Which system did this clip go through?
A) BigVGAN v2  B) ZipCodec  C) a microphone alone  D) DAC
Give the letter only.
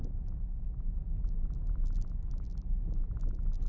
C